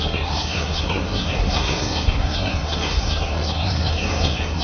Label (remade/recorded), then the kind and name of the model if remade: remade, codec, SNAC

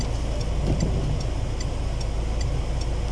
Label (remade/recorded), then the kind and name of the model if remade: recorded